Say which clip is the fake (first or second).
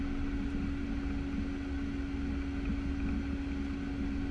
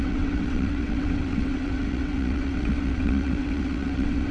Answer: second